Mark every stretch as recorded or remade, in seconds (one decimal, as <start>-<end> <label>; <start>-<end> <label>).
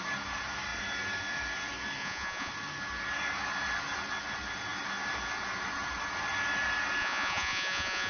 0.0-2.0 recorded; 2.0-2.5 remade; 2.5-7.0 recorded; 7.0-8.1 remade